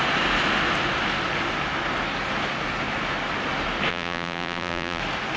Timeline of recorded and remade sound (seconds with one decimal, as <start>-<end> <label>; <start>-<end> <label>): 0.0-3.9 recorded; 3.9-5.0 remade; 5.0-5.4 recorded